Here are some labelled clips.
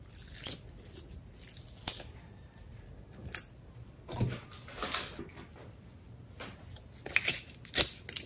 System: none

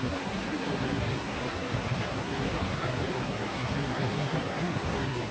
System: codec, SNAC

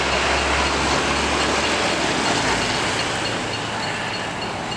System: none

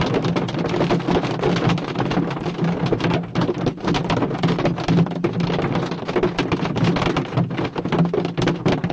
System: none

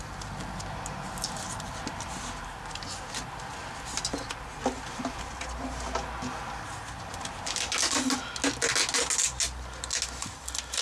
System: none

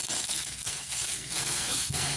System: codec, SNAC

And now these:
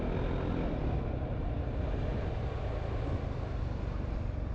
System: none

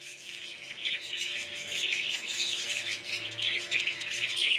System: codec, SNAC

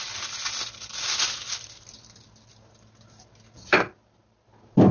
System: none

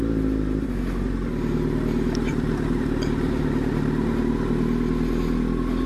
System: none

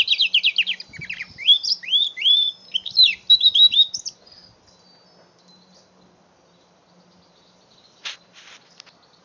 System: none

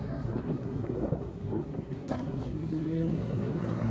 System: codec, SNAC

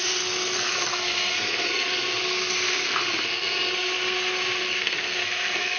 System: codec, SNAC